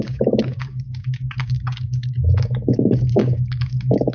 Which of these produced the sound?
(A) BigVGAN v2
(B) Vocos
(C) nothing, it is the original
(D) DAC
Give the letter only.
D